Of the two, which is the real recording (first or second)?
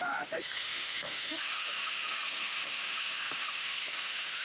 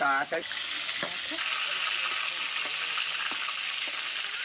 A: second